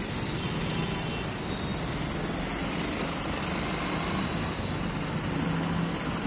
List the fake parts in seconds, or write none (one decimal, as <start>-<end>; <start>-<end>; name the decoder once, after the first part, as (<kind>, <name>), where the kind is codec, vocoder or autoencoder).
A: none